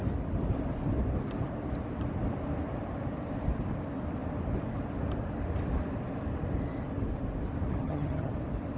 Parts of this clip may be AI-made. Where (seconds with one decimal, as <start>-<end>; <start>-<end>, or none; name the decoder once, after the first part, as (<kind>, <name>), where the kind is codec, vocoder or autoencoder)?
7.8-8.3 (vocoder, HiFi-GAN)